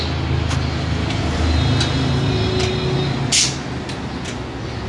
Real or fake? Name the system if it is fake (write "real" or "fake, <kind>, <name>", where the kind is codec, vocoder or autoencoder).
real